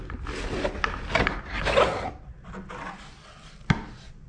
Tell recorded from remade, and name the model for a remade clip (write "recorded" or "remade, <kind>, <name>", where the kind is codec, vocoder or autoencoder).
recorded